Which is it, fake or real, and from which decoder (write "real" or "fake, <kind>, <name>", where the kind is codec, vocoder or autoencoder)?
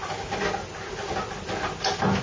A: real